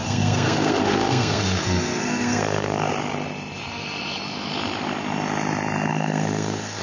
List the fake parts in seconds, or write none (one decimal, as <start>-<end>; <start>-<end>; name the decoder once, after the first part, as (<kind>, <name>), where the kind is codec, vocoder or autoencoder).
0.0-2.9 (codec, SNAC); 5.9-6.8